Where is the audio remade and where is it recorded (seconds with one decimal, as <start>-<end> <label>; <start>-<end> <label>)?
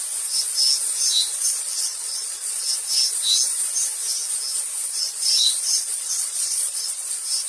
0.0-1.3 recorded; 1.3-2.6 remade; 2.6-5.0 recorded; 5.0-7.1 remade; 7.1-7.5 recorded